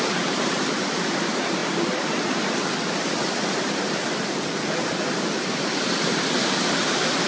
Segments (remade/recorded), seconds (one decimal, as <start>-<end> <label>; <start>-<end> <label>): 0.0-7.3 recorded